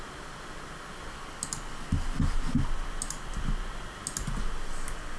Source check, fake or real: real